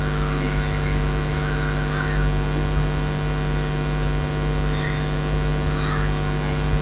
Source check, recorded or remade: recorded